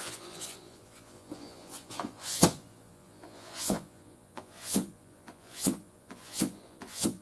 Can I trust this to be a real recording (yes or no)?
no